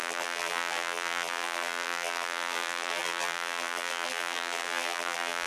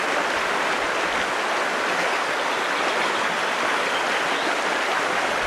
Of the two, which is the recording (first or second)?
second